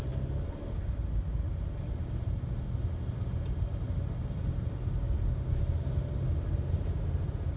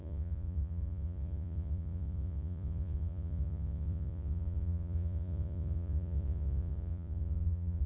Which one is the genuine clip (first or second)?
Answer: first